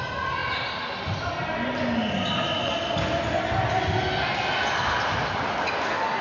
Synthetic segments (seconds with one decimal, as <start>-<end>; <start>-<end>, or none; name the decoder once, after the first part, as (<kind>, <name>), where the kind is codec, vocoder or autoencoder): none